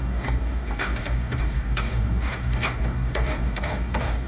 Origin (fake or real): fake